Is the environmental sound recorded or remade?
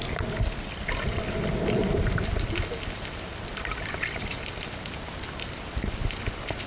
recorded